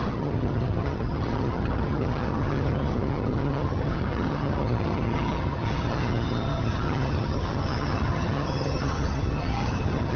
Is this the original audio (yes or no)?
no